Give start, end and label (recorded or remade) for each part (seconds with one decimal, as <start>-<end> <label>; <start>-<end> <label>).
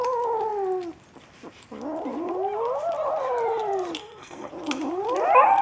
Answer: 0.0-4.0 recorded; 4.0-4.5 remade; 4.5-5.6 recorded